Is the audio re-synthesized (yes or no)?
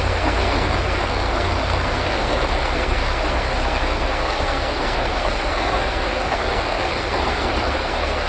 yes